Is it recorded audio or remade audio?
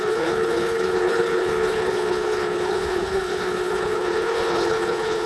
remade